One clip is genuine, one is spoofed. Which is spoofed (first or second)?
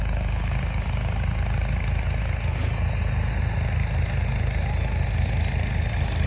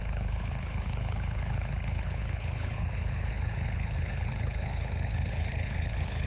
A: second